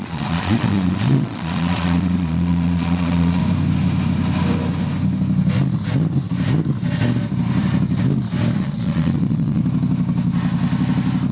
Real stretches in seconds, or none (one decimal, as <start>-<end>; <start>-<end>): 3.4-8.6; 9.6-11.3